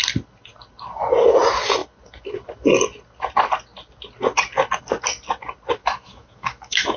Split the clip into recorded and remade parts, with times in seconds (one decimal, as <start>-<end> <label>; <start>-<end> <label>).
0.0-5.8 recorded; 5.8-7.0 remade